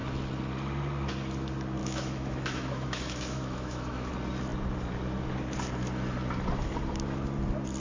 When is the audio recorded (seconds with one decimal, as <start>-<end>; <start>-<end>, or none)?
0.0-1.8; 4.1-7.8